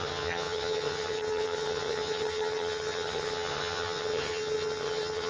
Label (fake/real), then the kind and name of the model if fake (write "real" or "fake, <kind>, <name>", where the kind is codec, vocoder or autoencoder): fake, vocoder, HiFi-GAN